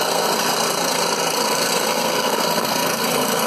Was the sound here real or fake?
fake